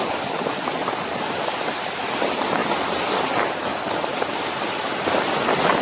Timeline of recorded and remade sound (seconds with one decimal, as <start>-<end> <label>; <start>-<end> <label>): 0.0-5.8 recorded